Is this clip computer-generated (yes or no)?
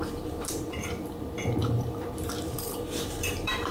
yes